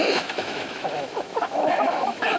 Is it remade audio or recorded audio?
remade